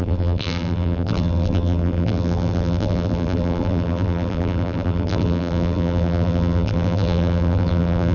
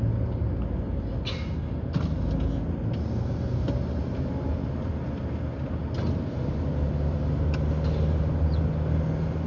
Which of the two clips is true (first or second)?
second